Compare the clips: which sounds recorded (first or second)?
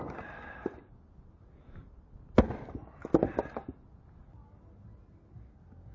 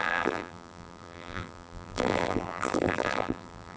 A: first